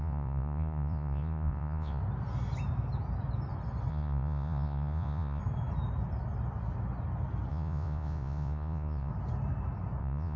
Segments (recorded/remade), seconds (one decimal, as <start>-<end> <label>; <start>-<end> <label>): 0.0-2.0 remade; 2.0-3.9 recorded; 3.9-5.4 remade; 5.4-7.5 recorded; 7.5-9.1 remade; 9.1-10.0 recorded; 10.0-10.4 remade